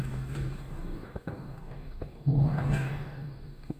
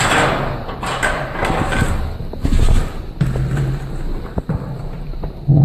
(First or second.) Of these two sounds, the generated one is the first